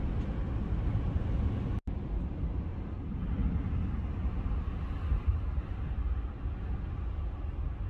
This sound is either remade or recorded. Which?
recorded